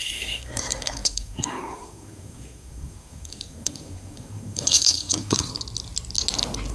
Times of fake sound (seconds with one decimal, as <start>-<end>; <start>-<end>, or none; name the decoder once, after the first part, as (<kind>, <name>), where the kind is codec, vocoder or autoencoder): 0.0-5.5 (codec, SNAC)